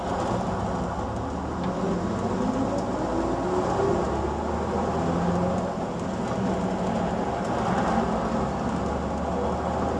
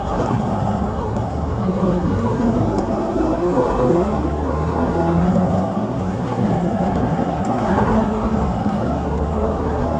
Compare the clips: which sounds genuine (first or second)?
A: first